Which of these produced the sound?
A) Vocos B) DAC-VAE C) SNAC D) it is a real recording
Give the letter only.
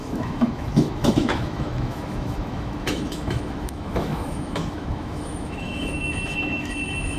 B